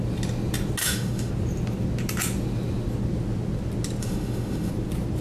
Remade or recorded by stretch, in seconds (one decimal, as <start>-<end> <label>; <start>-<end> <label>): 0.0-0.8 recorded; 0.8-1.3 remade; 1.3-4.0 recorded; 4.0-4.7 remade; 4.7-5.2 recorded